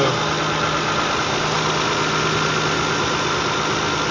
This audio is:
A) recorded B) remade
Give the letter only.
A